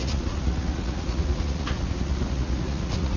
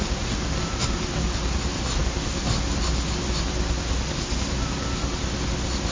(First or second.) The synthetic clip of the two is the first